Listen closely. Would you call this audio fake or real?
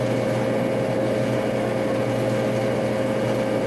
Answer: real